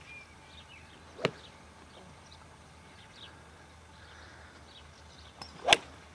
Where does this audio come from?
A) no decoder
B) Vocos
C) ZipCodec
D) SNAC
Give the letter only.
A